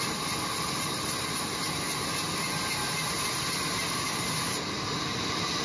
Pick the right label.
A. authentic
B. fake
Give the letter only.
A